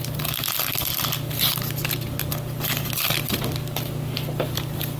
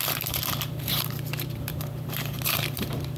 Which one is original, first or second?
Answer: first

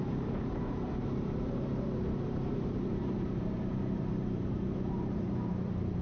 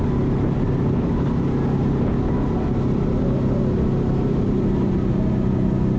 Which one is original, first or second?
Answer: second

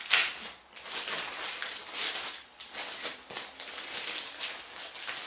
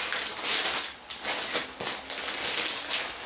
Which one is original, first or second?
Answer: second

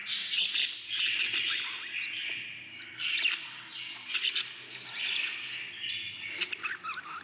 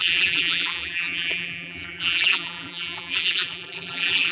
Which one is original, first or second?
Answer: first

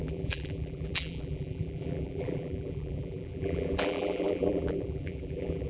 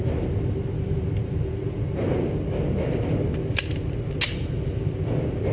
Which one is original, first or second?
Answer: second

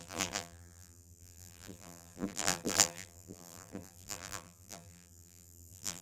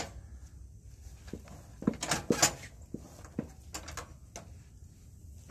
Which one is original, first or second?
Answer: second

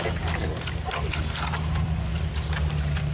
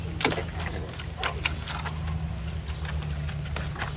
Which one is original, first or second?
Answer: second